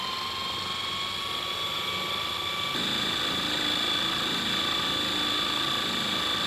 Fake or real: real